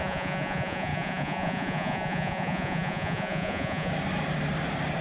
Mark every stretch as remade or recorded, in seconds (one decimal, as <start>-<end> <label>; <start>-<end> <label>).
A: 0.0-3.9 remade; 3.9-5.0 recorded